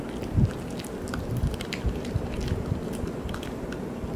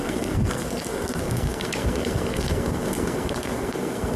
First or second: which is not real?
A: second